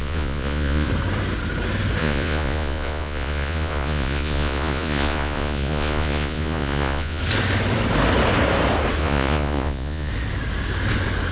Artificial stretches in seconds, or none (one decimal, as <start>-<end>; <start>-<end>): 0.0-0.9; 2.0-7.2; 9.0-10.1